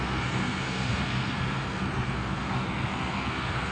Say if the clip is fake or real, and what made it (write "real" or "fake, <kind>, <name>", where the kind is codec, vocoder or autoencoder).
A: fake, codec, SNAC